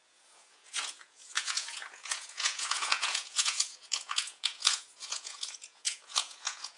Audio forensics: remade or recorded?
remade